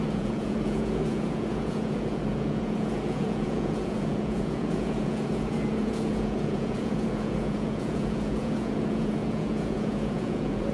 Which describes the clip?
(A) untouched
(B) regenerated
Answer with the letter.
B